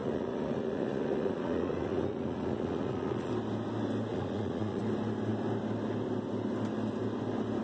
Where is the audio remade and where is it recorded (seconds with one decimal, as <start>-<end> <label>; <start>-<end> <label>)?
0.0-3.3 remade; 3.3-4.1 recorded; 4.1-4.8 remade; 4.8-7.6 recorded